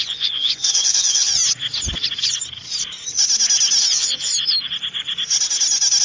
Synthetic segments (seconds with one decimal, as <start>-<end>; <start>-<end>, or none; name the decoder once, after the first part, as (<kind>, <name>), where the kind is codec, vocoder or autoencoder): 0.0-1.4 (vocoder, Vocos); 3.8-4.3